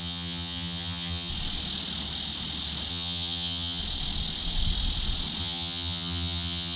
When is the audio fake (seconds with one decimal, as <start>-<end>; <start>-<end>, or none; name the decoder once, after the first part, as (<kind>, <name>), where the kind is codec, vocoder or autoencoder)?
0.0-1.3 (vocoder, HiFi-GAN); 2.9-3.8; 5.4-6.8